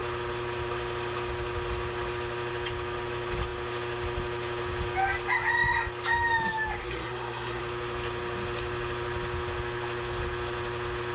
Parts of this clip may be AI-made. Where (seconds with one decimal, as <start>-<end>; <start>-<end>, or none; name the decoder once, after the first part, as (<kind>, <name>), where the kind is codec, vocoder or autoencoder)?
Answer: 6.8-7.6 (codec, SNAC)